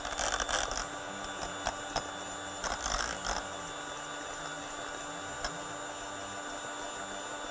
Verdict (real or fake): real